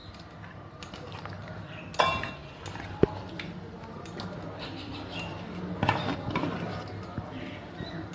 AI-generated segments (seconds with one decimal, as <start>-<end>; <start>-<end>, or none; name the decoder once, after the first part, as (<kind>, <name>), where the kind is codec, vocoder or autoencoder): none